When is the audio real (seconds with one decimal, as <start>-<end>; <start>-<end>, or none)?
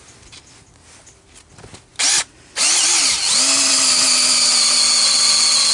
0.0-5.7